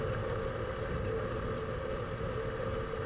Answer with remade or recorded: recorded